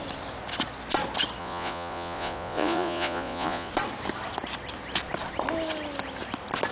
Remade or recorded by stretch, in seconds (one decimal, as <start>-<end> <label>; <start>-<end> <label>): 0.0-1.4 recorded; 1.4-3.7 remade; 3.7-6.7 recorded